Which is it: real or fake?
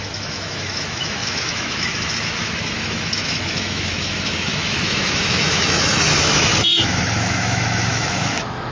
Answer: fake